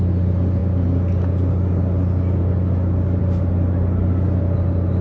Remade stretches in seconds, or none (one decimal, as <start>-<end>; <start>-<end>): none